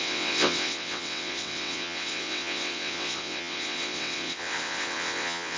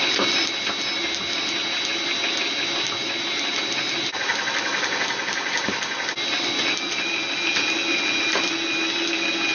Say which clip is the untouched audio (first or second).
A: second